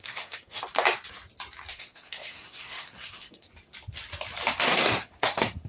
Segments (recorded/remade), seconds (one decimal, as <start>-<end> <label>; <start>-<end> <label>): 0.0-0.6 remade; 0.6-1.7 recorded; 1.7-3.5 remade; 3.5-4.6 recorded; 4.6-5.7 remade